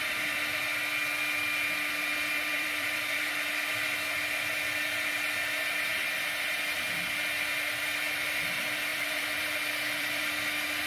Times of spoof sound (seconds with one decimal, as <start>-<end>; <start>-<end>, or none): 2.5-3.2; 8.9-10.2

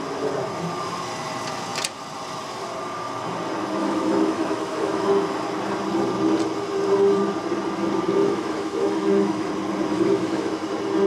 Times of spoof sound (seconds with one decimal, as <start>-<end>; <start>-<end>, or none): 3.8-5.1; 8.2-9.5; 9.9-10.5

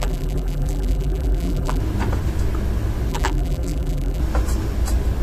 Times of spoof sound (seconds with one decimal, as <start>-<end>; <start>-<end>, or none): 0.0-1.8; 3.1-4.2

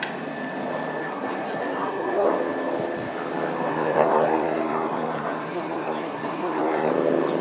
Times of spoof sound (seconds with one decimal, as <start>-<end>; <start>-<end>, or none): 1.0-2.3; 3.7-6.9

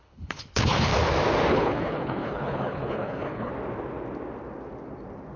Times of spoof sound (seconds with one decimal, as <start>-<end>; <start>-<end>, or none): 0.0-0.9; 1.5-3.5

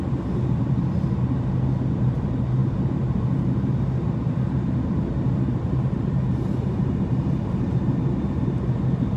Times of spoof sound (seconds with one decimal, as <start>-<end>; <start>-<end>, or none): none

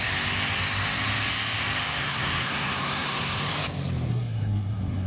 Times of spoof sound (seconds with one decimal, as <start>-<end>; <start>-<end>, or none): 2.0-3.5; 4.1-5.1